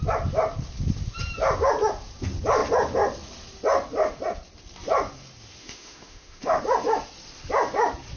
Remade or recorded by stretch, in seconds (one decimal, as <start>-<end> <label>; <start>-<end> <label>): 0.0-5.6 recorded; 5.6-6.6 remade; 6.6-8.2 recorded